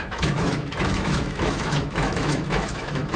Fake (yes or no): yes